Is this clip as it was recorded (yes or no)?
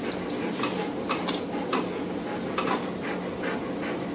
yes